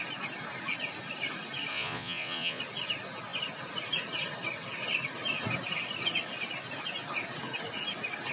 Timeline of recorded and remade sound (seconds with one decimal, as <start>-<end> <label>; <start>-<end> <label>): 0.0-1.7 recorded; 1.7-2.6 remade; 2.6-8.3 recorded